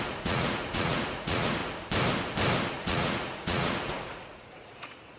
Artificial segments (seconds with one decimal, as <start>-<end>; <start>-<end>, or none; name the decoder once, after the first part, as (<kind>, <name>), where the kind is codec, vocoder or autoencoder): 0.0-1.6 (vocoder, Vocos); 2.7-5.2